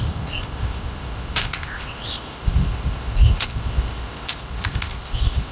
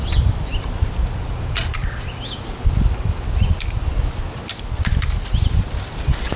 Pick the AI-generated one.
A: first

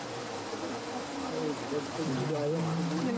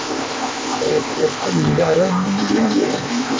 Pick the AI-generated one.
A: second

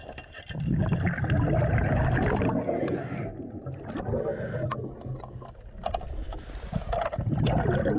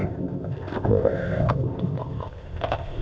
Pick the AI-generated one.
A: second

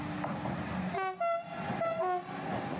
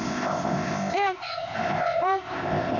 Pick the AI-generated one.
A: second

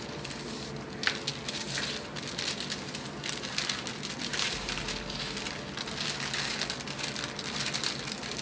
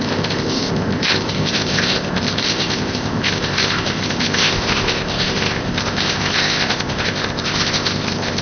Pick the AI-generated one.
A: second